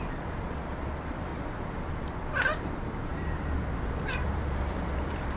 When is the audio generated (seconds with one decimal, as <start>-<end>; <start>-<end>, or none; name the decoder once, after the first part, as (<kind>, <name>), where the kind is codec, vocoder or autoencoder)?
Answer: 0.0-1.3 (vocoder, BigVGAN v2); 1.9-5.4